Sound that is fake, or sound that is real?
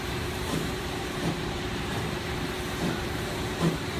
fake